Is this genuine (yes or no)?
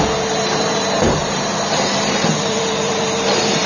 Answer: no